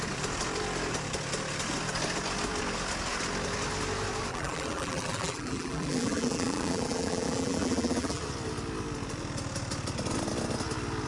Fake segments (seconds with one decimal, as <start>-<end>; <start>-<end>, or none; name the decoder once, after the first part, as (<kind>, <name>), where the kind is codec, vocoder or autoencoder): 4.3-8.2 (vocoder, BigVGAN v2)